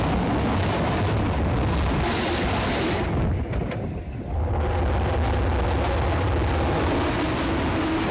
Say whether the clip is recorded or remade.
recorded